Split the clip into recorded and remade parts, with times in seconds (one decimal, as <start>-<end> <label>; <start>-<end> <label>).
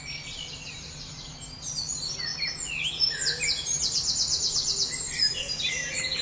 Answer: 0.0-6.2 recorded